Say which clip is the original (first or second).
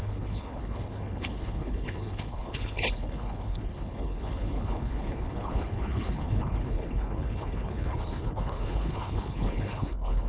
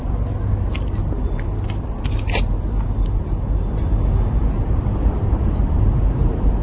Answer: second